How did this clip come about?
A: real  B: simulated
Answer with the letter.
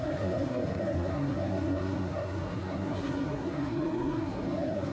B